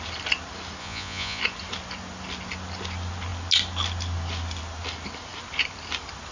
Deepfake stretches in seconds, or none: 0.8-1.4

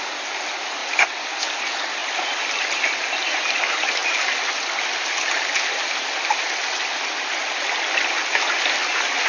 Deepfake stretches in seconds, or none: none

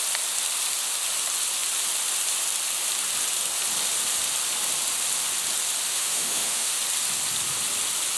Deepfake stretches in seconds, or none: 5.9-6.8